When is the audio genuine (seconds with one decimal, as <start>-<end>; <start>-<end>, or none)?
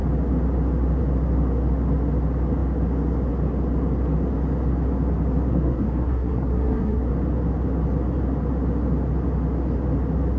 0.0-5.5; 7.1-10.4